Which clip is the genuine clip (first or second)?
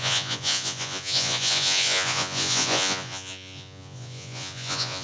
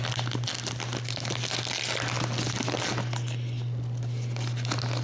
second